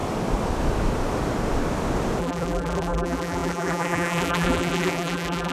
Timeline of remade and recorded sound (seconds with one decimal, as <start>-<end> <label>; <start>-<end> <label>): 0.0-2.2 recorded; 2.2-5.5 remade